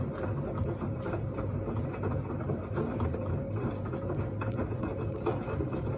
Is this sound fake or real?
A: real